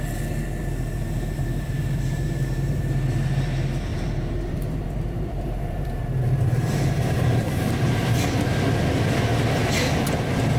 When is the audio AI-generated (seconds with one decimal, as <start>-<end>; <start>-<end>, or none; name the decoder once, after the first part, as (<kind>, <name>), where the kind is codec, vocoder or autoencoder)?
0.6-2.8 (vocoder, BigVGAN v2); 3.9-8.5